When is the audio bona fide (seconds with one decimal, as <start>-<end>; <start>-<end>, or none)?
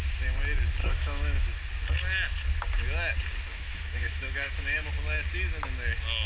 0.0-0.8; 1.4-3.5; 4.9-6.3